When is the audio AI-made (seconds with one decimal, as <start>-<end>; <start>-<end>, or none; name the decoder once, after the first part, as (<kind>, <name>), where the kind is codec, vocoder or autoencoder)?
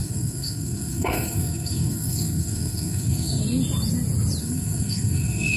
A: 0.0-3.4 (codec, SNAC); 4.4-5.6